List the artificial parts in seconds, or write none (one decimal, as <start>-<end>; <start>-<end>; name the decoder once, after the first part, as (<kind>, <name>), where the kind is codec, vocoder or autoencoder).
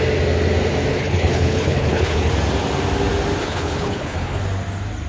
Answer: 0.9-2.3 (codec, HILCodec); 3.4-4.4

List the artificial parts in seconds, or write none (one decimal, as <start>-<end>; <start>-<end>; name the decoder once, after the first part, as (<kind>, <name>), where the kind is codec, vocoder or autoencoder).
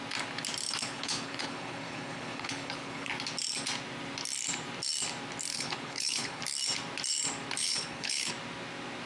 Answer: 0.8-3.1 (codec, HILCodec); 5.5-6.4; 7.6-8.3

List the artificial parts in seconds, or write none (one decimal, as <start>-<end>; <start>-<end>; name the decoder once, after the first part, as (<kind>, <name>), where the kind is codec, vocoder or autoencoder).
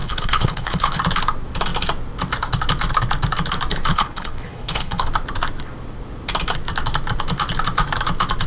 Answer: 0.0-1.0 (codec, HILCodec); 3.9-5.1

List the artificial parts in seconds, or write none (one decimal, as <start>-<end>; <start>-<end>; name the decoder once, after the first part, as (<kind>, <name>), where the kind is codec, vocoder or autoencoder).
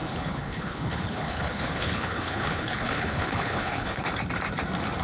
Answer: 0.0-4.1 (codec, HILCodec)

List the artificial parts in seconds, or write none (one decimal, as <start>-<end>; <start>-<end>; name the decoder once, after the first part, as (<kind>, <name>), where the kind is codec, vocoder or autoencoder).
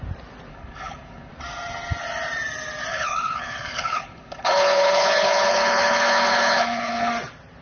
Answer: 0.5-1.3 (codec, HILCodec); 2.9-7.1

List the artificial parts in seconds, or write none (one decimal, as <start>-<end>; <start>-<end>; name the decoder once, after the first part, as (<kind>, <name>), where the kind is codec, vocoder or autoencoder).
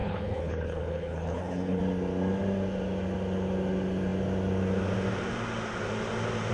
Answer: 0.0-1.8 (codec, HILCodec)